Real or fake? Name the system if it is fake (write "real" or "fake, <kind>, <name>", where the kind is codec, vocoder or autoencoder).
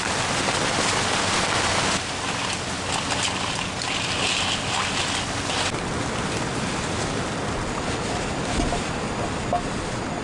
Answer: real